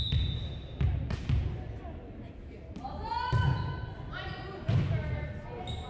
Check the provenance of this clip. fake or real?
real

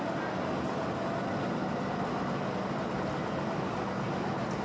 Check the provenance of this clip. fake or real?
real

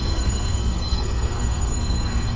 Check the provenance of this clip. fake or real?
fake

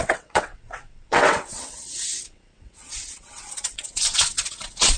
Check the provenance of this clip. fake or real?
fake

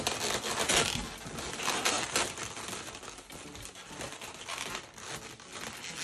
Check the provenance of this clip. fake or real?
real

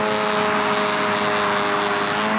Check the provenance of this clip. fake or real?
real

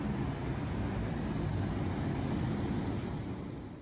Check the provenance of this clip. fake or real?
real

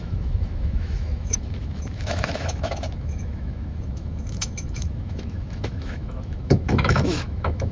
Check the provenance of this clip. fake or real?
fake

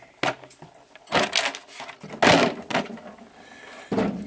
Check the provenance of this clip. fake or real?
real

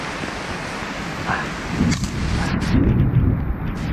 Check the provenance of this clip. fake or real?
real